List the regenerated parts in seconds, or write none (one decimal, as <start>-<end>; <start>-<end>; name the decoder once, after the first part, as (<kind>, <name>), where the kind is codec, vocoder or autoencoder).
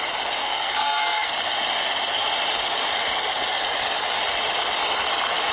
0.4-1.3 (codec, SNAC)